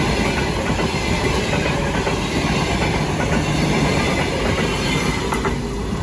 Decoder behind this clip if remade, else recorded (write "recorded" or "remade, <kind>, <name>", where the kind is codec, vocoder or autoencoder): recorded